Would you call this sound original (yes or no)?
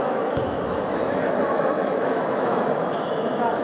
no